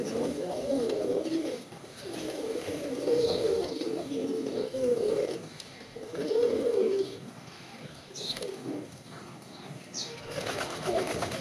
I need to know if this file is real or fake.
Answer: fake